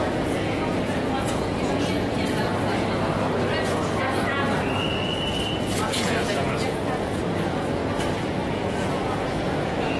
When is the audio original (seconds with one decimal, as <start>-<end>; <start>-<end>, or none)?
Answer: 2.5-3.7; 4.4-5.8; 7.8-8.5